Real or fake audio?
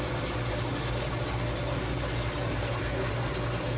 real